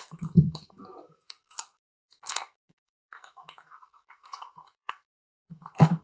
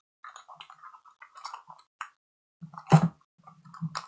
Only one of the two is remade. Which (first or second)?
first